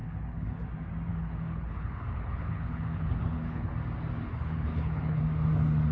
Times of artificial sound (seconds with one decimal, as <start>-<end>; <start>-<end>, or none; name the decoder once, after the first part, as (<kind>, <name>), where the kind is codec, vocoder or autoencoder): 0.0-0.6 (codec, HILCodec); 1.1-3.7; 4.3-5.2